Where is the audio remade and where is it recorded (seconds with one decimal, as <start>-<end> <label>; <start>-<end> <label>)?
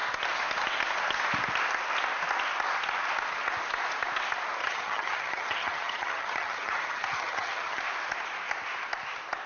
0.0-4.6 recorded; 4.6-7.8 remade; 7.8-9.5 recorded